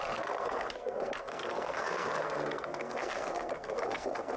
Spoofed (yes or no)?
yes